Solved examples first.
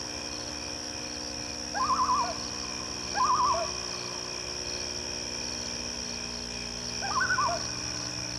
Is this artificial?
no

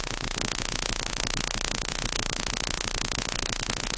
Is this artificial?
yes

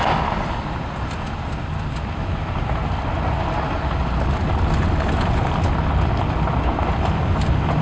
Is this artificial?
no